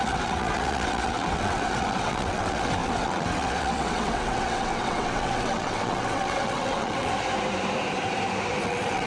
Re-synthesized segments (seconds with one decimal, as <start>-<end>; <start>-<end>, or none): 0.0-7.1; 8.6-9.1

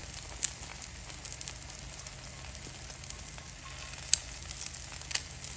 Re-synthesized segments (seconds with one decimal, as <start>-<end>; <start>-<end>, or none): none

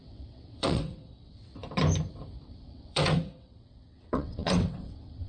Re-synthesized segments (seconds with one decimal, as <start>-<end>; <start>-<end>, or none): 0.0-1.6; 2.5-5.3

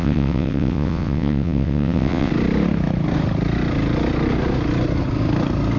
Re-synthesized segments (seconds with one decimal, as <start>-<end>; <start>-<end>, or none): 0.0-2.3

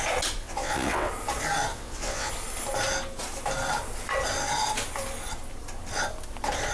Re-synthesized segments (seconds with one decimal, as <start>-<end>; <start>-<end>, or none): 0.4-1.1; 1.7-2.3

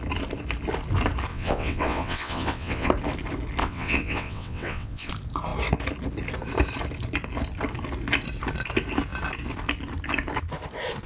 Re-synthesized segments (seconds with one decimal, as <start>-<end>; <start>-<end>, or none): 1.3-2.9; 3.6-5.1